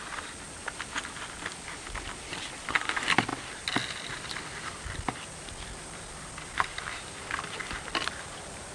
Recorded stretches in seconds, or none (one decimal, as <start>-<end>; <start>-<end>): 0.0-8.7